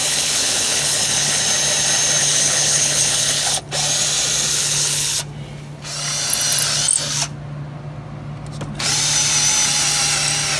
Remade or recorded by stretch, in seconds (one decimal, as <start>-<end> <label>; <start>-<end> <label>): 0.0-1.4 remade; 1.4-2.2 recorded; 2.2-3.6 remade; 3.6-4.5 recorded; 4.5-5.2 remade; 5.2-10.6 recorded